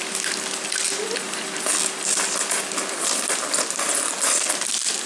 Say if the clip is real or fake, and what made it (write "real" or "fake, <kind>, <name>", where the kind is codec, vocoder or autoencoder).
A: real